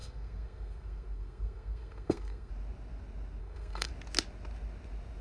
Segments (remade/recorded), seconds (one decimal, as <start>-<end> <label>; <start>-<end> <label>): 0.0-2.5 remade; 2.5-3.4 recorded; 3.4-3.9 remade; 3.9-5.2 recorded